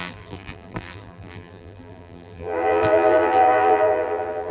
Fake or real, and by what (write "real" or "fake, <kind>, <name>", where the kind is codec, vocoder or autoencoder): fake, vocoder, BigVGAN v2